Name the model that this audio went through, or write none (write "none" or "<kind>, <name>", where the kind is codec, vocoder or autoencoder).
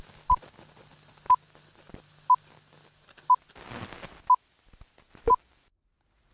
none